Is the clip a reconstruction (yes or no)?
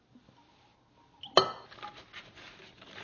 no